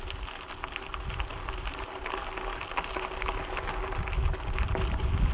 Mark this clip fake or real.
real